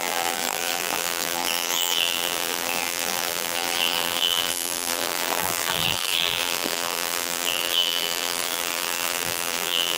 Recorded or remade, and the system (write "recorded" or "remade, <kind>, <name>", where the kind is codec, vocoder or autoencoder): remade, vocoder, BigVGAN v2